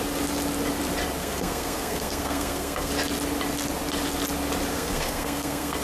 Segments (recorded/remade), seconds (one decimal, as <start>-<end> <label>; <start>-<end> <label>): 0.0-1.2 recorded; 1.2-2.9 remade; 2.9-4.7 recorded; 4.7-5.8 remade